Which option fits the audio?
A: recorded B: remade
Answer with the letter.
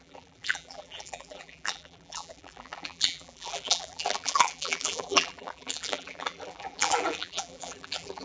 B